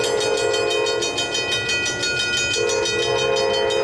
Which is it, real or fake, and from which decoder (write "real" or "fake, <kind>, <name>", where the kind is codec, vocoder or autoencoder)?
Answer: real